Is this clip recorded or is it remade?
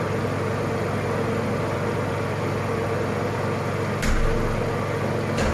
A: recorded